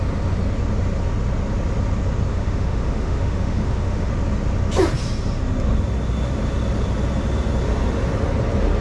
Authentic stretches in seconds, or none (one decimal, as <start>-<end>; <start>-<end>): 0.0-2.3; 4.1-8.8